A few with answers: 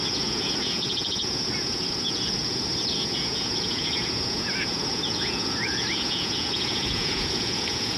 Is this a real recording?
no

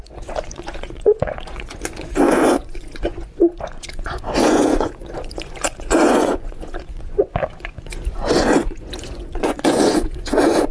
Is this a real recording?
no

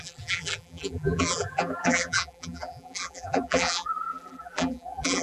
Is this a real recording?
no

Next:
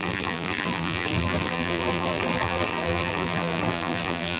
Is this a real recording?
no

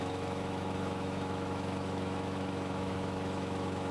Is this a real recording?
no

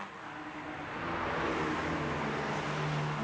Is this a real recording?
yes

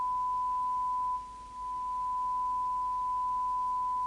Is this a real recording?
yes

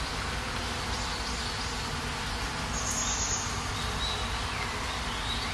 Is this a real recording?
yes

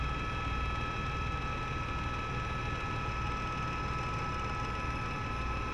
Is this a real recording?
yes